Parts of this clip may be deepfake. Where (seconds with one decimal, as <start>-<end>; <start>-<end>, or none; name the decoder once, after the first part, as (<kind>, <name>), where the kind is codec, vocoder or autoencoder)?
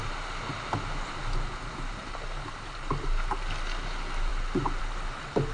none